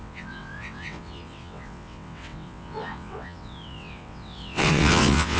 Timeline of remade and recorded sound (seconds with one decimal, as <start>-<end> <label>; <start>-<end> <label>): 0.0-5.4 remade